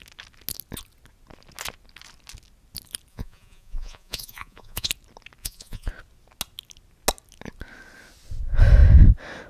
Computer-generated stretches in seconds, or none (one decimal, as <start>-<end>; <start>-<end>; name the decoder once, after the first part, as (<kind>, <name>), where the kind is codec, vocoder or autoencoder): 3.1-4.9 (vocoder, Vocos); 5.4-5.9